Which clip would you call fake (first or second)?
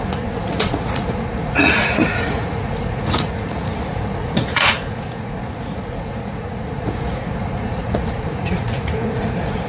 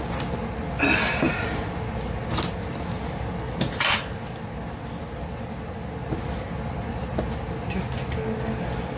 first